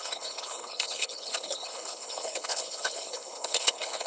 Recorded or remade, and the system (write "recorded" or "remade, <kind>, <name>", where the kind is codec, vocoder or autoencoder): remade, codec, HILCodec